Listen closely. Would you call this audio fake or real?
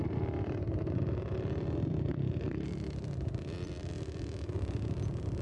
real